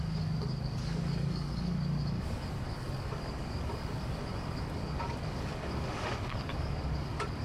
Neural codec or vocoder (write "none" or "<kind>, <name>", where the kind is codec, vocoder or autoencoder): codec, DAC